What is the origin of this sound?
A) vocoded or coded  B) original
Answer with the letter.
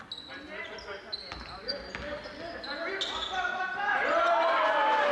B